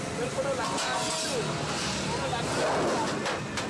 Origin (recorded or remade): recorded